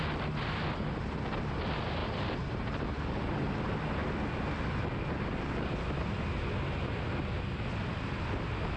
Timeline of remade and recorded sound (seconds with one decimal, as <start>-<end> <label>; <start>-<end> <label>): 0.0-2.0 recorded; 2.0-3.1 remade; 3.1-8.8 recorded